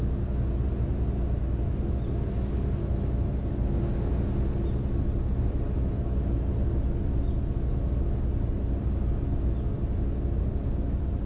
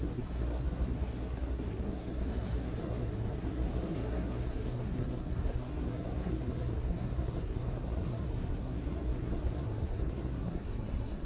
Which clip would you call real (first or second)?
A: first